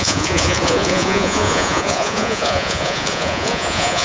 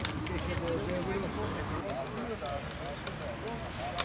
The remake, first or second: first